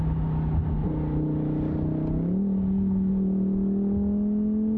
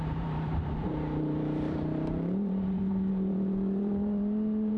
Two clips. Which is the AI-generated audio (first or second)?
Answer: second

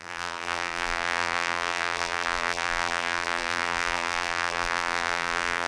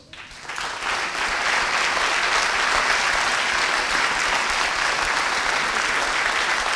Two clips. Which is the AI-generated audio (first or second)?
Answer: first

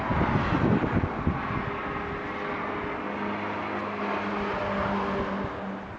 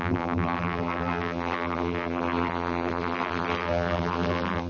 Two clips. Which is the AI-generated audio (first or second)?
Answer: second